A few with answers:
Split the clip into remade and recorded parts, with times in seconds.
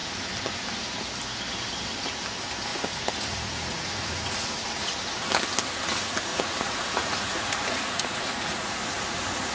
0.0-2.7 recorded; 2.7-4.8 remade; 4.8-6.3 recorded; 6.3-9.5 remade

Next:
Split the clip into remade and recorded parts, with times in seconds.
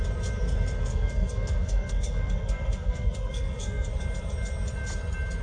0.0-0.9 recorded; 0.9-3.9 remade; 3.9-5.4 recorded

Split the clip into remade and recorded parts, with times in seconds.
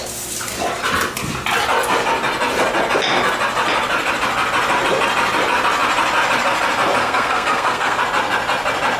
0.0-7.0 recorded; 7.0-8.0 remade; 8.0-9.0 recorded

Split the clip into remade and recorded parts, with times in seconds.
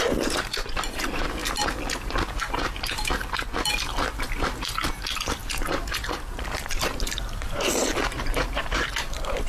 0.0-1.4 remade; 1.4-2.4 recorded; 2.4-3.2 remade; 3.2-4.9 recorded; 4.9-9.5 remade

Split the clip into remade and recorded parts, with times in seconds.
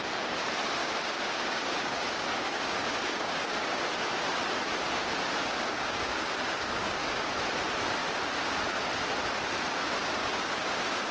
0.0-0.8 recorded; 0.8-3.8 remade; 3.8-5.4 recorded; 5.4-7.3 remade; 7.3-10.2 recorded; 10.2-11.1 remade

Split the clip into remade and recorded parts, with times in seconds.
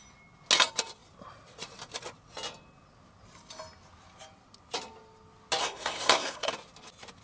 0.0-5.6 recorded; 5.6-6.5 remade; 6.5-7.2 recorded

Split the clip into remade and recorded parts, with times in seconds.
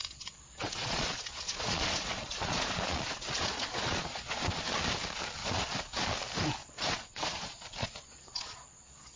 0.0-4.6 remade; 4.6-5.4 recorded; 5.4-6.1 remade; 6.1-6.6 recorded; 6.6-9.2 remade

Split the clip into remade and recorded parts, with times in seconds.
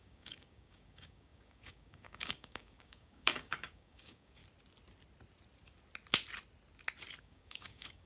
0.0-4.4 remade; 4.4-7.2 recorded; 7.2-8.1 remade